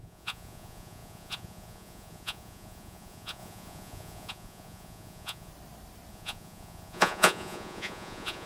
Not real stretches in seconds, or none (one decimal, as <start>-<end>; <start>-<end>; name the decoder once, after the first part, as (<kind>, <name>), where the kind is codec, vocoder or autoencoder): 0.0-5.5 (vocoder, Vocos); 6.1-8.5